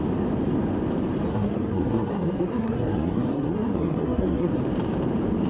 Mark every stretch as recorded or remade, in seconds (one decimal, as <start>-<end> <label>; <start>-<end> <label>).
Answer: 0.0-1.3 recorded; 1.3-4.6 remade; 4.6-5.5 recorded